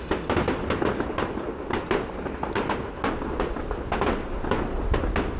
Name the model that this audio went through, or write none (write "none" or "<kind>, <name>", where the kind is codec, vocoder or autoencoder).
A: none